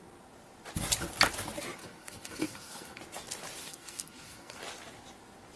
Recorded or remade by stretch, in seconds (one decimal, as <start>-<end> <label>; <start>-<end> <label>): 0.0-1.8 recorded; 1.8-3.0 remade; 3.0-3.6 recorded; 3.6-4.6 remade; 4.6-5.6 recorded